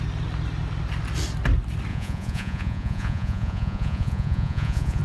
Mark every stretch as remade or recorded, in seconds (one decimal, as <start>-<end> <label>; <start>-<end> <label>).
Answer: 0.0-1.9 recorded; 1.9-5.0 remade